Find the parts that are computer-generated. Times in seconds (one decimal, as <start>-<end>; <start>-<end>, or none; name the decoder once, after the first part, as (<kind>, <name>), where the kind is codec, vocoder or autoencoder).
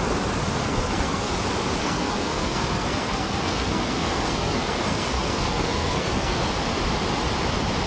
0.6-1.3 (codec, SNAC); 1.8-6.5